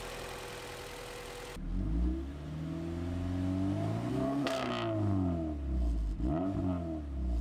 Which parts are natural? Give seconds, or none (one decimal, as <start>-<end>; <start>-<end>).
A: 0.0-4.1; 4.7-7.4